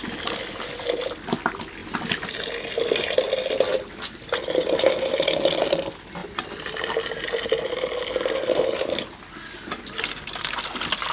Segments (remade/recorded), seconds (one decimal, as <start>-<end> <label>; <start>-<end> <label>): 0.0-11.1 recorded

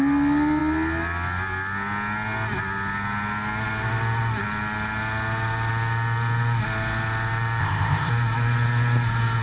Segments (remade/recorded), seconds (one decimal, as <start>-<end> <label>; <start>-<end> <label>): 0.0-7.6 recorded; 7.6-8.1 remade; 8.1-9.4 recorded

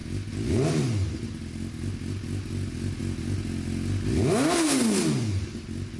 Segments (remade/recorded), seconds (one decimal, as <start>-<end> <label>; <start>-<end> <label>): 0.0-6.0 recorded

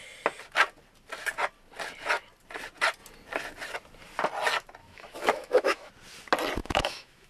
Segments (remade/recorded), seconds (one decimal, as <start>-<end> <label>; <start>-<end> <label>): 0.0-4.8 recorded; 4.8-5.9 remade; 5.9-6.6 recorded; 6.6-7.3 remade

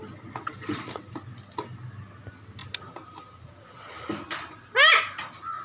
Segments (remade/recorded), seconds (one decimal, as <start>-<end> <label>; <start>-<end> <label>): 0.0-5.6 recorded